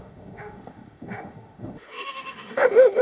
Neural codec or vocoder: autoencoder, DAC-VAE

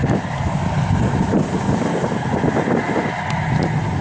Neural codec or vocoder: none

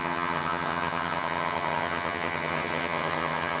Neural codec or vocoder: vocoder, HiFi-GAN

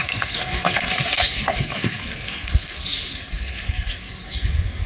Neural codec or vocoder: codec, SNAC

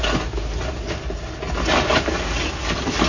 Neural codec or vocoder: none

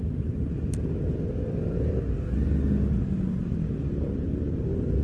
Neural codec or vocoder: none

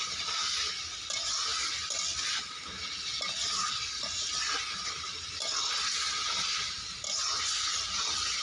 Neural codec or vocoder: none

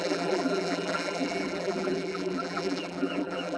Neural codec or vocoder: vocoder, BigVGAN v2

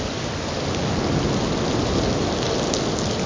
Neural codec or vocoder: none